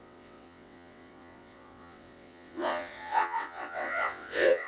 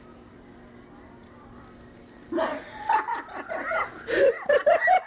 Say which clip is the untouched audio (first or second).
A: second